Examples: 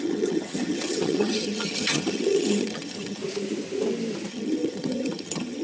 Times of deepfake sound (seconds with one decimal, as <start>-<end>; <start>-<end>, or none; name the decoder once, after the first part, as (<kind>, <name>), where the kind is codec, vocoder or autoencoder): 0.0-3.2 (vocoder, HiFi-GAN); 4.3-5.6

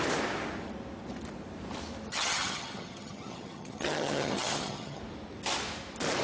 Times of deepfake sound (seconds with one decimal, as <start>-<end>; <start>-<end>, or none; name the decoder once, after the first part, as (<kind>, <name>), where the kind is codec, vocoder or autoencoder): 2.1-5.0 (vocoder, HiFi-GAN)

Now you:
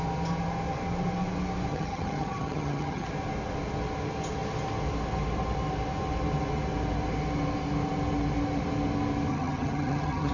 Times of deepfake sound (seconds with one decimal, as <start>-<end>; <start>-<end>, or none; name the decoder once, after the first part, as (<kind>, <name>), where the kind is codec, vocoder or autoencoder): 1.7-3.1 (vocoder, HiFi-GAN); 9.3-10.3